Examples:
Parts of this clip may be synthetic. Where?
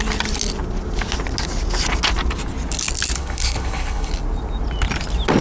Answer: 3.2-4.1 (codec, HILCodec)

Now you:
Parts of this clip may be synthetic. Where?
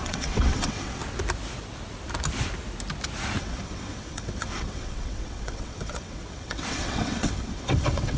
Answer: 0.0-1.0 (vocoder, WaveNeXt); 3.4-8.2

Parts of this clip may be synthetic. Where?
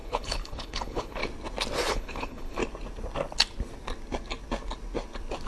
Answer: 0.0-1.2 (codec, HILCodec); 1.9-2.6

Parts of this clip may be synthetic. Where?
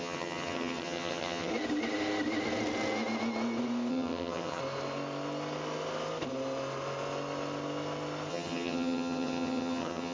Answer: 0.0-1.5 (vocoder, HiFi-GAN); 3.9-4.6; 8.3-10.1